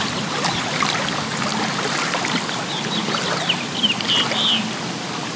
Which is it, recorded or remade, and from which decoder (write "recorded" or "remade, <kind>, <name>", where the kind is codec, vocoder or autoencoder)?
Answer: recorded